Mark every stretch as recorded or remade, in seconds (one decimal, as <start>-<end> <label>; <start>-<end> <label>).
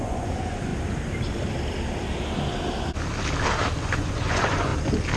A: 0.0-0.7 remade; 0.7-3.8 recorded; 3.8-4.7 remade; 4.7-5.2 recorded